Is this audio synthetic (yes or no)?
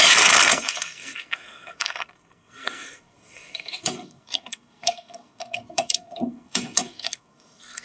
yes